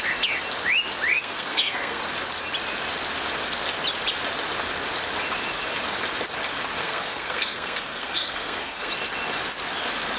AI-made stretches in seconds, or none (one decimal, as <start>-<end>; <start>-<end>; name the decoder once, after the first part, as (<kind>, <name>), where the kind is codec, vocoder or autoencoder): 1.1-2.0 (codec, SNAC); 6.8-8.9